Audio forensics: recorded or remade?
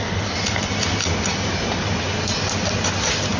recorded